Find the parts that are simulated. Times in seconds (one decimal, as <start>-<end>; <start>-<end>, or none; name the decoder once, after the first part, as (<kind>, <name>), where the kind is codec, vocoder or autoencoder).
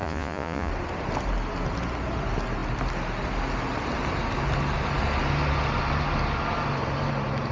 0.0-0.7 (vocoder, Vocos)